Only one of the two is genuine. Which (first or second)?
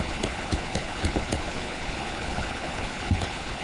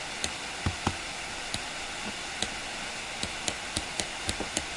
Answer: second